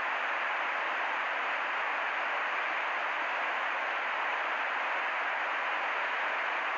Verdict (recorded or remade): recorded